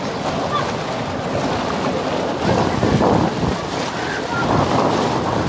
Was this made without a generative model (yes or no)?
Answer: yes